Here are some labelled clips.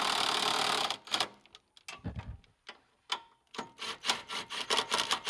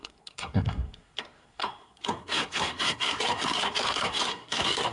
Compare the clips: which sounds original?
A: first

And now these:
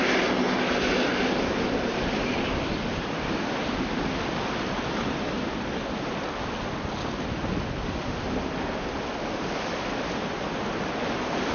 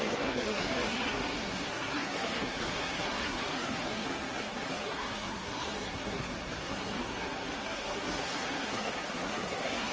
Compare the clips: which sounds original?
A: first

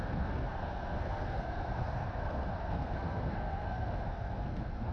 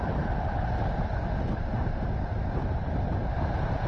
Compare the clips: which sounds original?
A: second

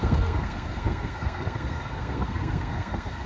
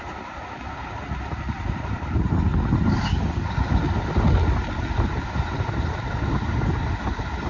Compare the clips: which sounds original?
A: second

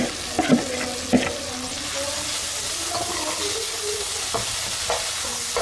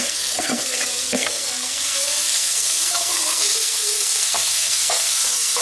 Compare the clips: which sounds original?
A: first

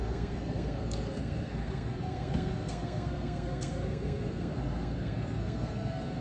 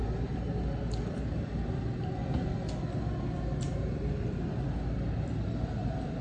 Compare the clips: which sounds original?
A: second